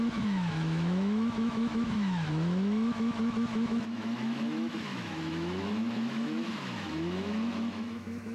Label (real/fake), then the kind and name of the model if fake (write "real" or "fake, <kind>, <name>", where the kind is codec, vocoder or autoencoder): fake, autoencoder, DAC-VAE